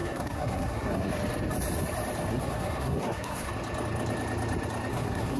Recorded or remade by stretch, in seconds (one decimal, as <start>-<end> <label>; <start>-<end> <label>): 0.0-1.1 remade; 1.1-2.3 recorded; 2.3-3.5 remade; 3.5-4.9 recorded; 4.9-5.4 remade